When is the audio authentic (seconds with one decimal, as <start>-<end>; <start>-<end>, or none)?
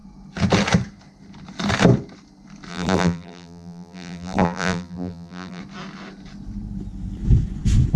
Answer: 0.0-2.7; 5.6-8.0